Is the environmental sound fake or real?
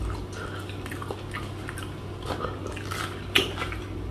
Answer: real